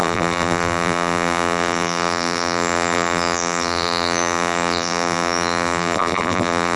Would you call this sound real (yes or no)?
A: no